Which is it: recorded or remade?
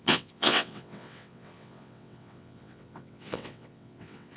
remade